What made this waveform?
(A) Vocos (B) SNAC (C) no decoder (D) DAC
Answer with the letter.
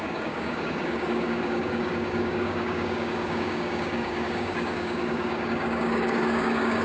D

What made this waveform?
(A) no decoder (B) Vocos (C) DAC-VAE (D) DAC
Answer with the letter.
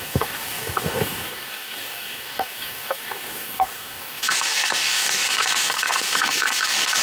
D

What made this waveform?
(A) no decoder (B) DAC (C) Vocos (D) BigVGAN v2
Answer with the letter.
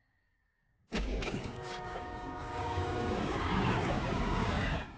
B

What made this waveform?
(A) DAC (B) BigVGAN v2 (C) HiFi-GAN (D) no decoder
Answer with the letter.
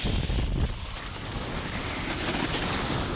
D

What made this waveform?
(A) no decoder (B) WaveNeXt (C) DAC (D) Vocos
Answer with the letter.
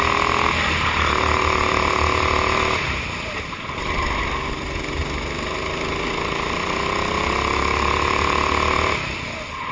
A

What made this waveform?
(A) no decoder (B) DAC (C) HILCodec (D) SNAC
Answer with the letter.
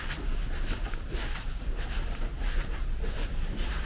A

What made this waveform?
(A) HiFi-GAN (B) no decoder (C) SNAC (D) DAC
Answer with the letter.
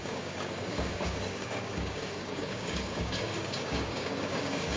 D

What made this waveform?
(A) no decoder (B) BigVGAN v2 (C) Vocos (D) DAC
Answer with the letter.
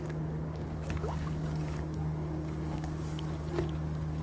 D